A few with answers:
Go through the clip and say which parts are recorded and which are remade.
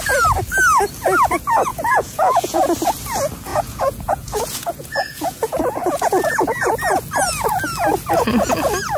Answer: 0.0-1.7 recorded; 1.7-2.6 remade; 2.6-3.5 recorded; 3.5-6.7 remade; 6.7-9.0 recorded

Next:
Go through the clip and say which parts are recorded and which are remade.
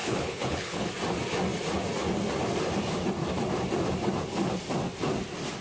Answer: 0.0-0.9 remade; 0.9-5.6 recorded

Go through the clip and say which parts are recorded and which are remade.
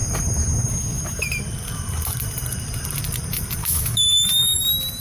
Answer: 0.0-3.6 recorded; 3.6-4.6 remade; 4.6-5.0 recorded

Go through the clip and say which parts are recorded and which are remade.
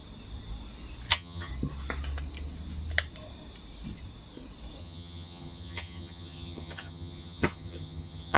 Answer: 0.0-1.1 recorded; 1.1-1.5 remade; 1.5-4.8 recorded; 4.8-8.4 remade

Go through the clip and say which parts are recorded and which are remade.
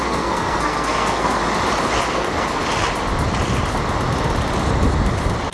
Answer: 0.0-1.4 remade; 1.4-2.1 recorded; 2.1-2.6 remade; 2.6-5.5 recorded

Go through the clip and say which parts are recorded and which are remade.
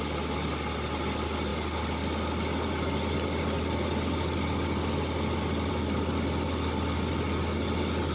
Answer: 0.0-8.1 recorded